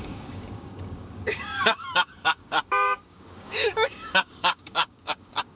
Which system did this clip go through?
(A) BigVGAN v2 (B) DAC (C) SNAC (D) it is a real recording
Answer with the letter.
B